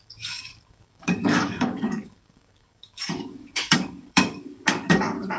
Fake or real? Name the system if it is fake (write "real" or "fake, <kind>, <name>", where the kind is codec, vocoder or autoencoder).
fake, codec, DAC